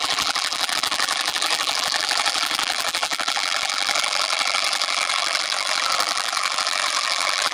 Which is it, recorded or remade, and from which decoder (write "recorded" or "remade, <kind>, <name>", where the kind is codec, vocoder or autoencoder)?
remade, vocoder, BigVGAN v2